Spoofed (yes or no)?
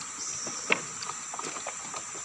no